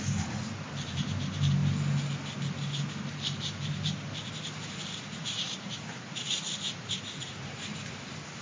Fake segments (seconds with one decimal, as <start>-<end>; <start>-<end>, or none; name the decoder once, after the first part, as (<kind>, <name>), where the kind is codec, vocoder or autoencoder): 5.1-7.3 (vocoder, Vocos)